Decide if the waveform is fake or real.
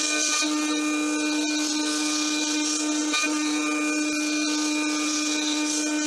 real